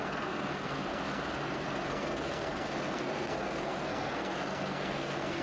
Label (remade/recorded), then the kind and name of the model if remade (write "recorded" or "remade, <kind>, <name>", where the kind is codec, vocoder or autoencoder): remade, codec, SNAC